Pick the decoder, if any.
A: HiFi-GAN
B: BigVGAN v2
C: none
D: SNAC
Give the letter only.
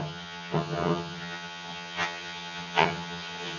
A